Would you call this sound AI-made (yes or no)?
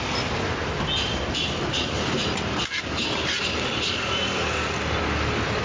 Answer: no